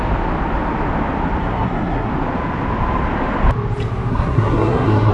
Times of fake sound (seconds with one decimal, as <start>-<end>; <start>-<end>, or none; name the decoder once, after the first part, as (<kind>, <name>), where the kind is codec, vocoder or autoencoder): 1.4-2.1 (codec, SNAC); 4.1-5.1